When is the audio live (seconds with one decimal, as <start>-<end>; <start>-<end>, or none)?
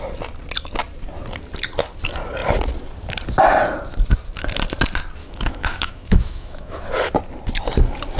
0.0-5.2; 6.8-8.2